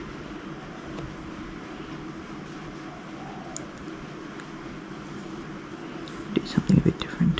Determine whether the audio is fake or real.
real